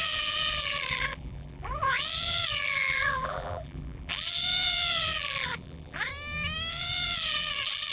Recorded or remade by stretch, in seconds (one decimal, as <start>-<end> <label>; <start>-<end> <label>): 0.0-6.1 remade; 6.1-6.7 recorded; 6.7-7.9 remade